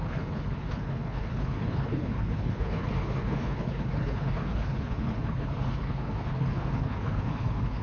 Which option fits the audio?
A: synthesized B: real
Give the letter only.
A